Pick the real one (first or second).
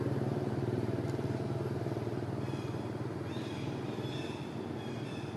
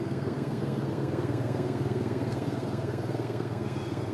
first